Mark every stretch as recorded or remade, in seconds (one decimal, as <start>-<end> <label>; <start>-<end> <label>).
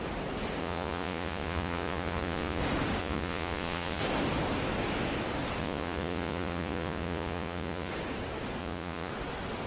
0.0-0.6 recorded; 0.6-2.6 remade; 2.6-3.0 recorded; 3.0-4.0 remade; 4.0-5.6 recorded; 5.6-7.9 remade; 7.9-8.6 recorded; 8.6-9.1 remade; 9.1-9.7 recorded